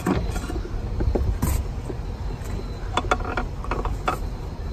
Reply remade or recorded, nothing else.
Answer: recorded